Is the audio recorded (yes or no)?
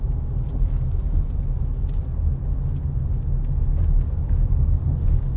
yes